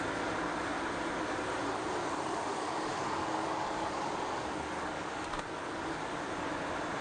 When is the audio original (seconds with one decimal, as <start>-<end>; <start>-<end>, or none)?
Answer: 0.0-2.0; 6.2-7.0